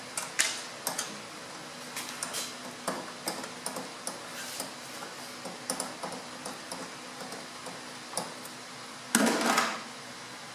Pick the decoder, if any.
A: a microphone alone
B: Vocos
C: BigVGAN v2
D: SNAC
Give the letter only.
A